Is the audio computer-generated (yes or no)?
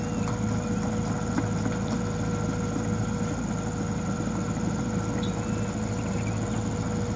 no